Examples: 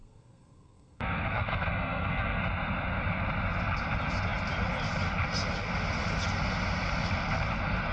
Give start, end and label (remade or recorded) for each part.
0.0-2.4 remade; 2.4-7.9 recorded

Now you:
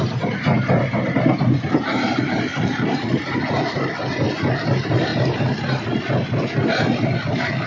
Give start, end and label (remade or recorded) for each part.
0.0-7.7 recorded

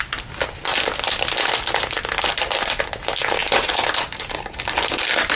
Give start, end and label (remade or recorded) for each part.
0.0-5.4 recorded

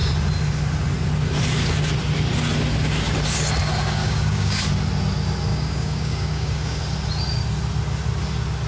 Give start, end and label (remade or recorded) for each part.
0.0-4.0 recorded; 4.0-4.6 remade; 4.6-5.5 recorded; 5.5-6.8 remade; 6.8-8.7 recorded

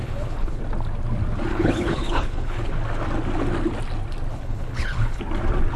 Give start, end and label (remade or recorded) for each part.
0.0-0.6 remade; 0.6-1.5 recorded; 1.5-2.7 remade; 2.7-4.3 recorded; 4.3-5.2 remade; 5.2-5.8 recorded

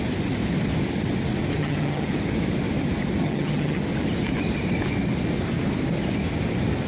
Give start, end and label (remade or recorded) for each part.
0.0-1.6 recorded; 1.6-2.1 remade; 2.1-3.2 recorded; 3.2-3.8 remade; 3.8-6.9 recorded

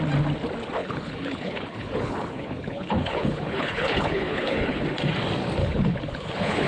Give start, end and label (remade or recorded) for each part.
0.0-0.8 recorded; 0.8-4.8 remade; 4.8-5.6 recorded; 5.6-6.7 remade